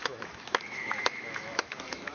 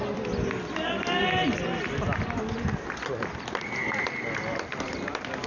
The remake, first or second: first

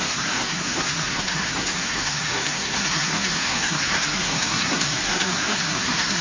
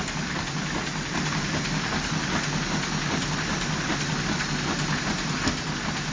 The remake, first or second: first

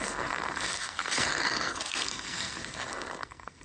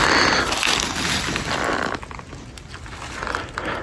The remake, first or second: first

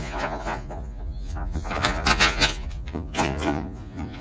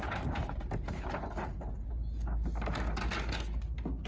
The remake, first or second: first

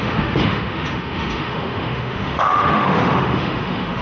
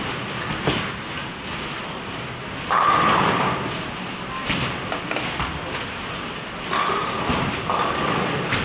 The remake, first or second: first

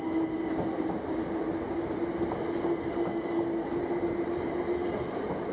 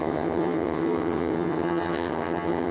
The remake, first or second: second